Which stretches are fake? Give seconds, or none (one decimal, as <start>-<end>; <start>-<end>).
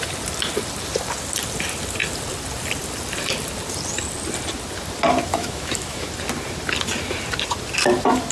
5.3-6.1